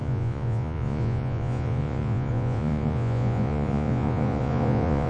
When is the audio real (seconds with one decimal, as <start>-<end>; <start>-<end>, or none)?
none